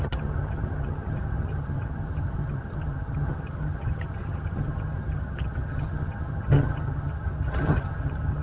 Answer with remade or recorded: remade